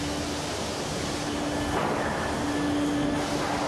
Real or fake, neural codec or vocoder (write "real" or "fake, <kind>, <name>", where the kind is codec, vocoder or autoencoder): real